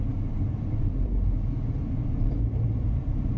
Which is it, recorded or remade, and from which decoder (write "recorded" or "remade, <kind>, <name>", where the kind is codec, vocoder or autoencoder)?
remade, vocoder, BigVGAN v2